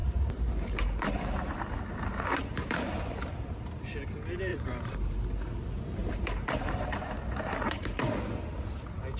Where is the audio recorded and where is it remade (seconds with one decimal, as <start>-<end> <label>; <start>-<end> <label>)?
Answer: 0.0-3.0 remade; 3.0-4.5 recorded; 4.5-5.2 remade; 5.2-6.0 recorded; 6.0-8.1 remade; 8.1-9.2 recorded